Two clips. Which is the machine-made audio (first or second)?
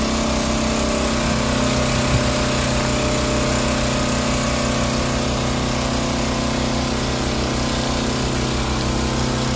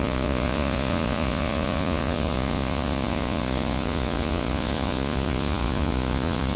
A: second